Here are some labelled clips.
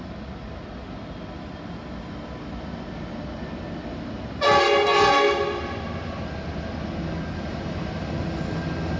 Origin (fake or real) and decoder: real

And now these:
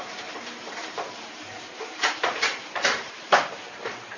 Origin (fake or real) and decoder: fake, vocoder, BigVGAN v2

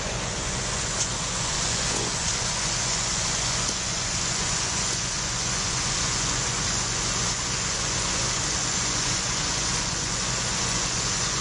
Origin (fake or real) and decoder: fake, vocoder, Vocos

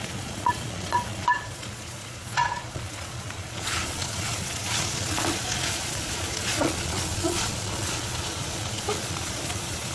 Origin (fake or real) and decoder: fake, vocoder, Vocos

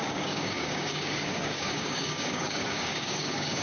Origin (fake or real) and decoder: fake, codec, DAC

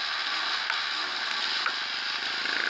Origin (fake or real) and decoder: real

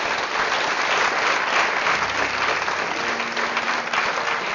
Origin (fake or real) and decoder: real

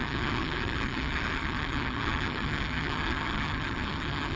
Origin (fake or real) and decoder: fake, vocoder, HiFi-GAN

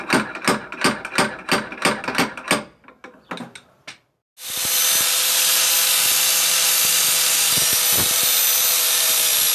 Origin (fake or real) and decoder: real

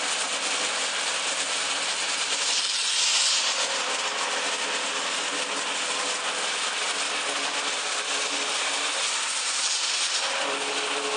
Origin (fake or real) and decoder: real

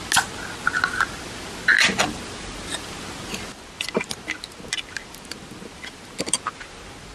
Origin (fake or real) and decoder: real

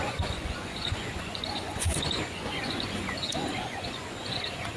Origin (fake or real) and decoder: fake, vocoder, Vocos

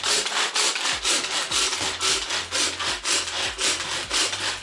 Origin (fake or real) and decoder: real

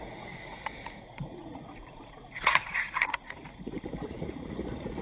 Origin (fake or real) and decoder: fake, vocoder, Vocos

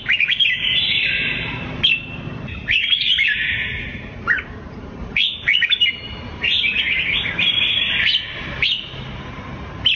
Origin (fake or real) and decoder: fake, vocoder, BigVGAN v2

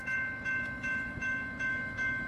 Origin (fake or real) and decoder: fake, autoencoder, DAC-VAE